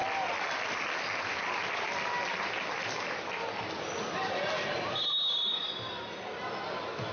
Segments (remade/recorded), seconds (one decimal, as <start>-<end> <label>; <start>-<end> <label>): 0.0-7.1 recorded